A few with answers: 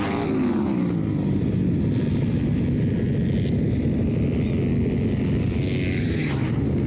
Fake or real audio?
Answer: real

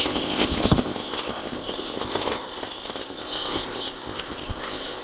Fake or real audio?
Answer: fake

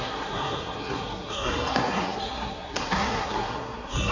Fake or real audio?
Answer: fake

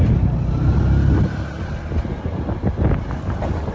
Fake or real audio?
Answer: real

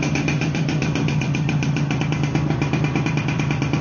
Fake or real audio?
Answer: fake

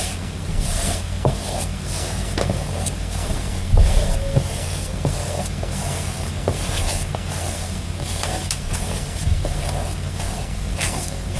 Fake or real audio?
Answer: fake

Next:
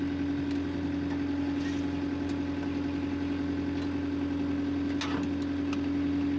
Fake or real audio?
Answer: real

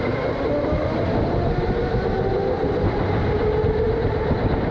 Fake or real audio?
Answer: real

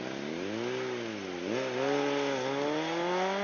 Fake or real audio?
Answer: real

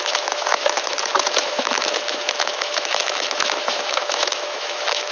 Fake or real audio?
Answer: fake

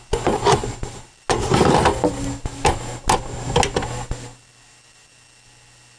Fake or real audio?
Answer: real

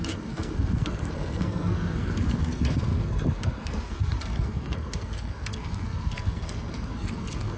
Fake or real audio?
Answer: fake